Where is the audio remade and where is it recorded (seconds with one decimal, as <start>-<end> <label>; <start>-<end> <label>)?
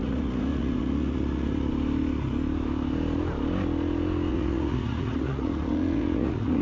0.0-1.7 remade; 1.7-4.3 recorded; 4.3-6.6 remade